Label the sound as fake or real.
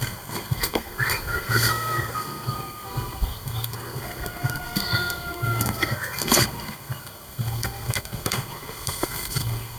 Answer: fake